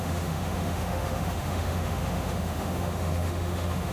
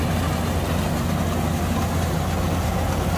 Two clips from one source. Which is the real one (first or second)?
second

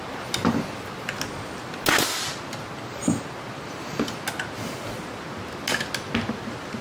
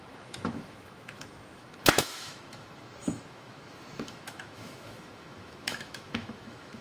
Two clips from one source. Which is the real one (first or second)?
first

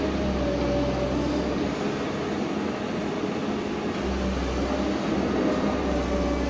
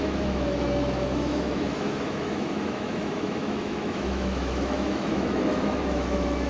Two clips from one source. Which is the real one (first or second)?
first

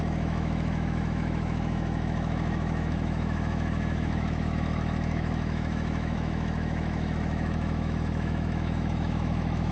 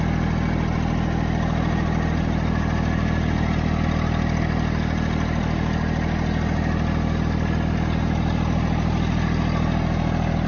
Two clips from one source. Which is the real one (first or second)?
second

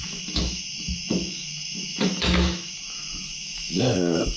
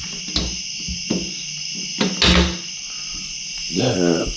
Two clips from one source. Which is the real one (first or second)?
second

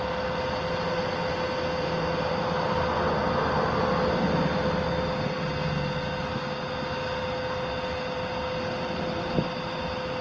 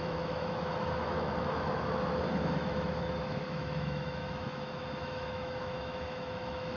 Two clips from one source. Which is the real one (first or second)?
first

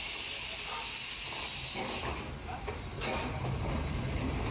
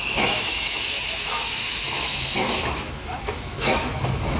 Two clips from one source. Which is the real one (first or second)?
first